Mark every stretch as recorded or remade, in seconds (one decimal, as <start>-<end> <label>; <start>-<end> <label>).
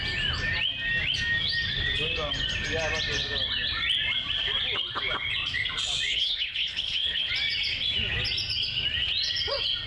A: 0.0-6.1 recorded; 6.1-7.3 remade; 7.3-9.9 recorded